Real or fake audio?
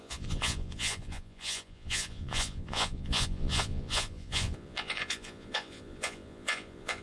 fake